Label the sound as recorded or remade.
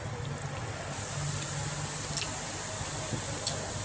recorded